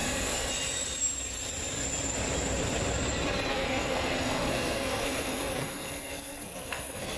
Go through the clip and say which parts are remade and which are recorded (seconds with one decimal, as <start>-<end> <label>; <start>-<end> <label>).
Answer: 0.0-0.5 remade; 0.5-3.5 recorded; 3.5-7.2 remade